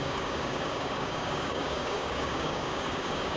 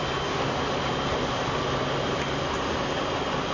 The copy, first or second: first